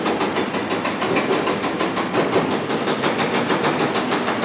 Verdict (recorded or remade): recorded